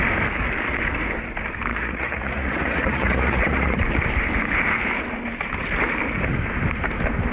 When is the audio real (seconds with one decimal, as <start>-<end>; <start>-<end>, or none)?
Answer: 0.0-1.7; 3.8-7.3